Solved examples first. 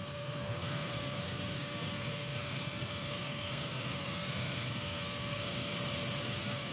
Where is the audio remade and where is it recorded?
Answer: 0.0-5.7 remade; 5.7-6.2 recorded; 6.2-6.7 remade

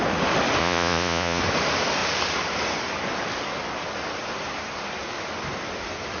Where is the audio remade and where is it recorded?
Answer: 0.0-0.6 recorded; 0.6-1.4 remade; 1.4-6.2 recorded

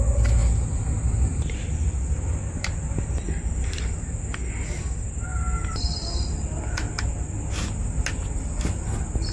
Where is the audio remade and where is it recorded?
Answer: 0.0-9.3 recorded

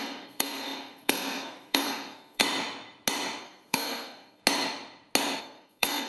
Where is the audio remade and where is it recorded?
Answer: 0.0-2.4 remade; 2.4-3.4 recorded; 3.4-4.4 remade; 4.4-5.4 recorded; 5.4-6.1 remade

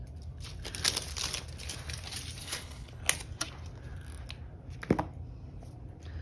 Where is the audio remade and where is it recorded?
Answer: 0.0-2.4 recorded; 2.4-3.0 remade; 3.0-6.2 recorded